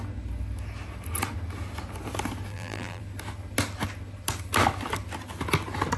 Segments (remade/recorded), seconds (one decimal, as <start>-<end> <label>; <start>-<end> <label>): 0.0-2.5 recorded; 2.5-3.0 remade; 3.0-6.0 recorded